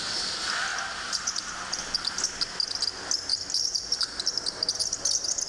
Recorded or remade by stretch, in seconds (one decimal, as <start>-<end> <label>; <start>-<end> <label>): 0.0-5.5 recorded